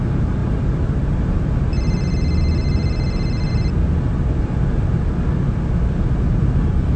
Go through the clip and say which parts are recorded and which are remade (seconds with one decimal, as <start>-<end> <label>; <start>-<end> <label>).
0.0-7.0 recorded